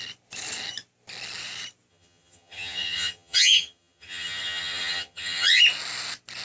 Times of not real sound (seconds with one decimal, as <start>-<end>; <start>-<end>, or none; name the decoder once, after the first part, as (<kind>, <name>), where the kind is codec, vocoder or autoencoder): 1.9-5.6 (vocoder, HiFi-GAN)